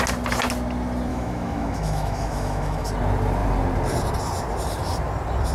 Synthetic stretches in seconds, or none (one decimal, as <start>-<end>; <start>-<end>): 1.1-2.9